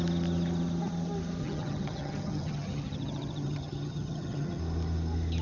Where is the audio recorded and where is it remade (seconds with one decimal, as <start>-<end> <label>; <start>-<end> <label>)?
0.0-1.4 recorded; 1.4-4.6 remade; 4.6-5.4 recorded